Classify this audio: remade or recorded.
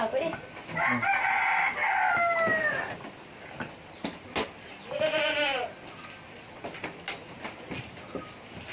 recorded